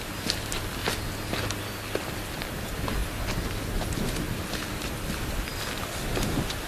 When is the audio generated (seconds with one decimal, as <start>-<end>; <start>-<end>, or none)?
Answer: none